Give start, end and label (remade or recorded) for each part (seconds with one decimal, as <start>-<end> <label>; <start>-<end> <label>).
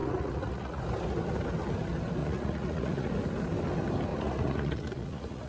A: 0.0-0.8 remade; 0.8-2.2 recorded; 2.2-3.1 remade; 3.1-4.1 recorded; 4.1-5.5 remade